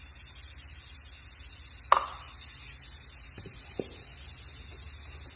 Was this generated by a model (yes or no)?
no